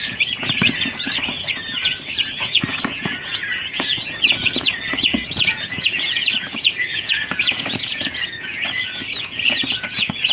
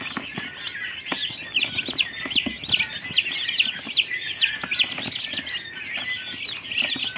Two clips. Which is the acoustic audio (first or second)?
second